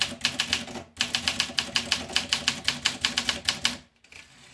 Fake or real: real